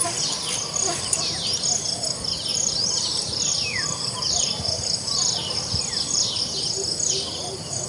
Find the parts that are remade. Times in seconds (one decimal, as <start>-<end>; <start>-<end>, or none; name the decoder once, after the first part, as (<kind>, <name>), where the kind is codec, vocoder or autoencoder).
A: 2.5-6.4 (vocoder, BigVGAN v2)